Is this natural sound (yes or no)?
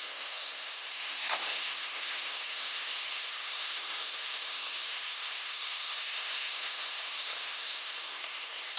no